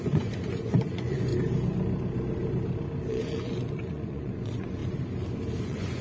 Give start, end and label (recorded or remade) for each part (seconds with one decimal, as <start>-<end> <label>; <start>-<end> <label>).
0.0-1.3 remade; 1.3-3.1 recorded; 3.1-4.8 remade; 4.8-5.6 recorded; 5.6-6.0 remade